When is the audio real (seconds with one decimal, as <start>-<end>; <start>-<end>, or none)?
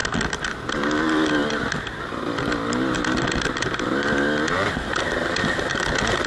0.0-6.3